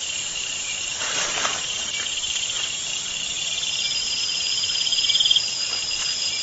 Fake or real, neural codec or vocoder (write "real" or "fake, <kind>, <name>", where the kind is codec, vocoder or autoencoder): fake, vocoder, BigVGAN v2